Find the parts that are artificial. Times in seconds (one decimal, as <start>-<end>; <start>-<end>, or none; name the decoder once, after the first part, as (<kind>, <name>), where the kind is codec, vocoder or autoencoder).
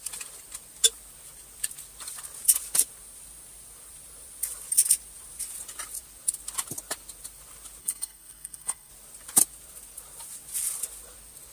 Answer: 7.8-8.9 (codec, SNAC)